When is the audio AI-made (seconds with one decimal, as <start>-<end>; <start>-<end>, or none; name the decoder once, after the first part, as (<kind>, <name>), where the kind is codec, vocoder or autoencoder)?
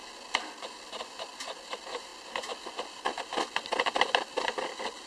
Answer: none